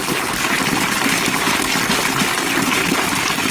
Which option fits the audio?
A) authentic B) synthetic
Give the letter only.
A